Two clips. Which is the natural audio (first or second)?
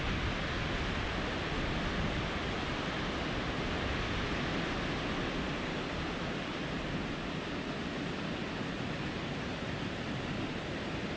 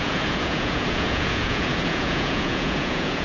first